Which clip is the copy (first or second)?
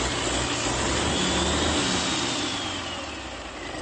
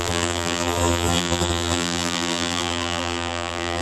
second